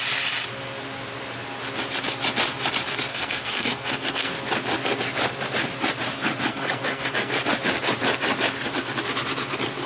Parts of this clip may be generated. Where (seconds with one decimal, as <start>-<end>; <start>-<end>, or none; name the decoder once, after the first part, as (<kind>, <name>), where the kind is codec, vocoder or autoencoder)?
3.1-4.3 (codec, SNAC); 6.5-7.3

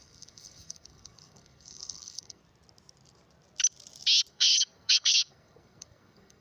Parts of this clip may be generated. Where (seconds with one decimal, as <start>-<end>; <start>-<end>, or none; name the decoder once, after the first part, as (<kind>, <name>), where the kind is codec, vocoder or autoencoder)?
0.0-2.4 (codec, SNAC); 4.3-6.4

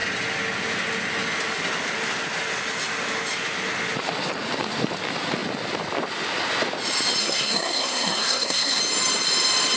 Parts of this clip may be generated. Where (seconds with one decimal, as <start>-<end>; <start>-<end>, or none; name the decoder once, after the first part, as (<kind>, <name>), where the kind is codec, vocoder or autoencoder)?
7.2-8.8 (codec, SNAC)

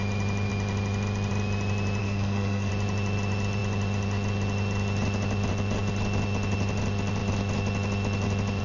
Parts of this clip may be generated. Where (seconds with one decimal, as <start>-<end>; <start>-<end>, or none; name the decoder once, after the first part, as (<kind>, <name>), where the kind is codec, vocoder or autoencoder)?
2.0-2.7 (codec, SNAC)

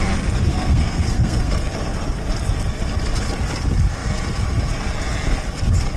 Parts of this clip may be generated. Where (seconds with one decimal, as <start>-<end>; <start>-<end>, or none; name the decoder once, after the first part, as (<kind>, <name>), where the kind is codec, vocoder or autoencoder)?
0.5-1.5 (codec, SNAC)

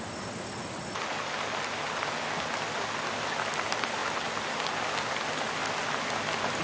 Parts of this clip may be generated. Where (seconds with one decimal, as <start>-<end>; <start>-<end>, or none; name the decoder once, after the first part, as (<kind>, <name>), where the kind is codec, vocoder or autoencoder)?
none

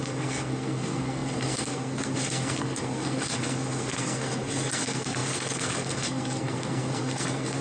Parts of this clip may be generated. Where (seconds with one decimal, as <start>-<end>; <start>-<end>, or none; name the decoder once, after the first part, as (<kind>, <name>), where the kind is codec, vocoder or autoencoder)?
0.0-7.6 (codec, SNAC)

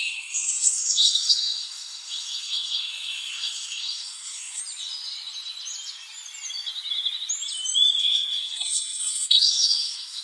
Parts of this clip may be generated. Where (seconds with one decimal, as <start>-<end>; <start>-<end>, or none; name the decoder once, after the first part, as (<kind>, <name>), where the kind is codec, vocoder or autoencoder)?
0.0-4.6 (codec, SNAC); 8.0-10.2